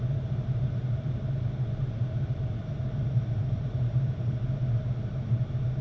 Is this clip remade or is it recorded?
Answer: remade